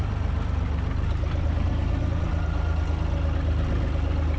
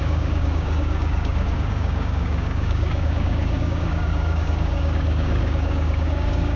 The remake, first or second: second